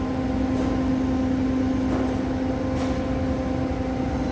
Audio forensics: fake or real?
real